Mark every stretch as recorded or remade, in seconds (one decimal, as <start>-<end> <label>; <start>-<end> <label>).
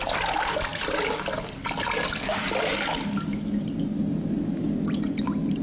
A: 0.0-5.6 recorded